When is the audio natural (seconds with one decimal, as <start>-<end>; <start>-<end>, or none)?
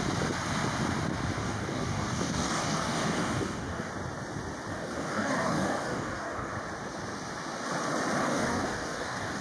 0.0-1.4; 3.9-4.7; 6.5-8.2